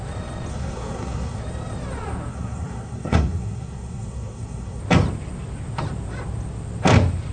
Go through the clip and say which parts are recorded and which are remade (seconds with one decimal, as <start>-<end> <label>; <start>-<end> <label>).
0.0-0.5 recorded; 0.5-1.4 remade; 1.4-2.3 recorded; 2.3-4.8 remade; 4.8-7.3 recorded